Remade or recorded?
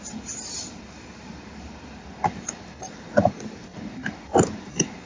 remade